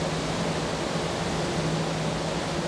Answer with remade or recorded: recorded